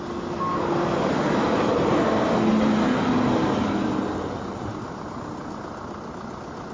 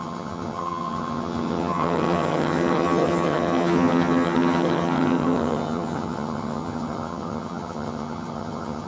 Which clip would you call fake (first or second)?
second